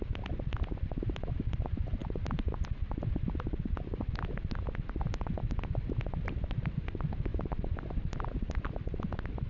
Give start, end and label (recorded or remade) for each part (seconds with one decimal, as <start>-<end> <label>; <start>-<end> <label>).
0.0-9.5 recorded